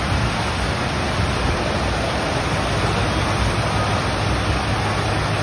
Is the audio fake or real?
real